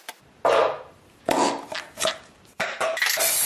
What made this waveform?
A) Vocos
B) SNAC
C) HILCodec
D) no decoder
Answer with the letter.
D